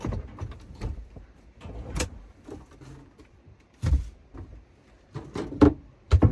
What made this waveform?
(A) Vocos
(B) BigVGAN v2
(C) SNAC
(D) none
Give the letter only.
B